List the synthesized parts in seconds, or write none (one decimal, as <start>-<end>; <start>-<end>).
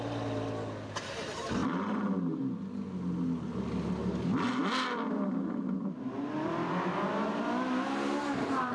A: none